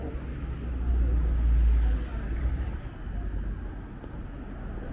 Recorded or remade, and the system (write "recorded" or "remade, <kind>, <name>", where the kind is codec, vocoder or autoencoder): recorded